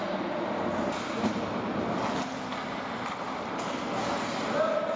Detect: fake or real real